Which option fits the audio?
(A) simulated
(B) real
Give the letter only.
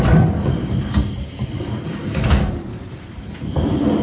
A